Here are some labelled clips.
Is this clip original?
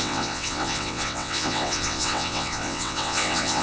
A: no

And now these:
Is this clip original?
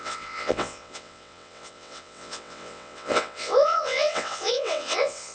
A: no